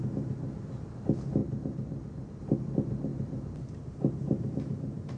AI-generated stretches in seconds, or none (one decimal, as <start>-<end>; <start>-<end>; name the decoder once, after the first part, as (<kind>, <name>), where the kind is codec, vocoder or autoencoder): 1.4-2.4 (vocoder, BigVGAN v2); 3.1-5.2